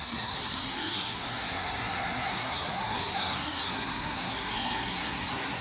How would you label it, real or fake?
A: fake